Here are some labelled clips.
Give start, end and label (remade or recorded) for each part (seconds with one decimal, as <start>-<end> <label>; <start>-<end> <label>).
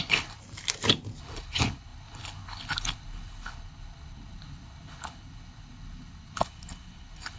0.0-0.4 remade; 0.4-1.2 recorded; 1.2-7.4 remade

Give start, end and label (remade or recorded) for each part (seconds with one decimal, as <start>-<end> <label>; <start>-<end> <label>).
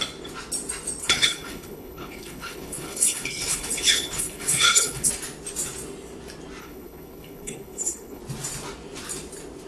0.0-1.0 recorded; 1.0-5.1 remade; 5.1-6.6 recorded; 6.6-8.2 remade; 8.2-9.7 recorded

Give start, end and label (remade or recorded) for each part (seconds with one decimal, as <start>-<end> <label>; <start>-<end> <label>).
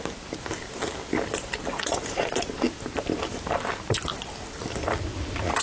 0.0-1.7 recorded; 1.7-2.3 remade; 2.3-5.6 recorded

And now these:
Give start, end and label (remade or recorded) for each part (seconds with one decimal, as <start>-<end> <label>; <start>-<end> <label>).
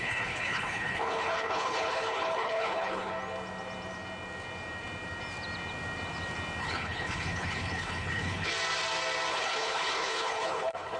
0.0-3.1 remade; 3.1-6.6 recorded; 6.6-8.5 remade; 8.5-9.3 recorded; 9.3-11.0 remade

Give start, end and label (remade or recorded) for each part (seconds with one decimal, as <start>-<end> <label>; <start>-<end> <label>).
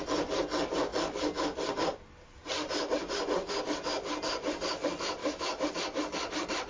0.0-5.2 recorded; 5.2-5.7 remade; 5.7-6.7 recorded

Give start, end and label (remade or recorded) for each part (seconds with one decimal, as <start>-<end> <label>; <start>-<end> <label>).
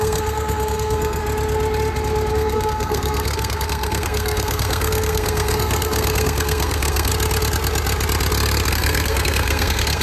0.0-1.2 remade; 1.2-2.3 recorded; 2.3-7.1 remade; 7.1-8.7 recorded; 8.7-10.0 remade